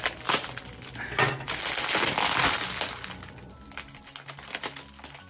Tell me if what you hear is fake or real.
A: real